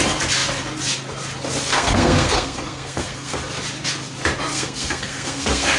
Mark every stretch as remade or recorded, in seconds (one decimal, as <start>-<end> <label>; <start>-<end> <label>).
0.0-1.7 recorded; 1.7-3.4 remade; 3.4-4.5 recorded; 4.5-5.8 remade